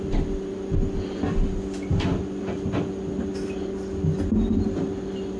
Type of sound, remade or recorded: recorded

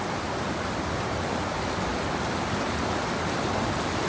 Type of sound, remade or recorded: recorded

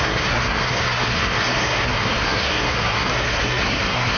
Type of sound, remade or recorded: remade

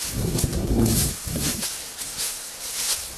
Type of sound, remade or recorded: remade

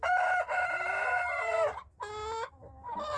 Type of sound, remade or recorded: recorded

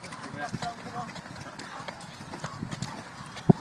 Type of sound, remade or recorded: recorded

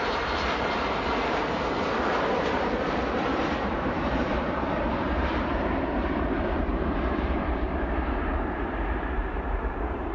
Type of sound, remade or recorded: remade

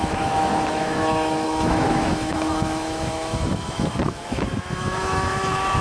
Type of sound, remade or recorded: remade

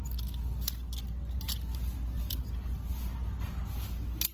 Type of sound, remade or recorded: recorded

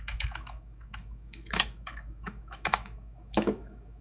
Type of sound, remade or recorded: remade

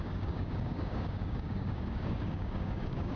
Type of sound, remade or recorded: remade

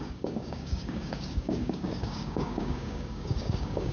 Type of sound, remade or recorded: remade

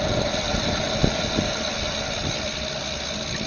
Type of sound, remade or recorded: recorded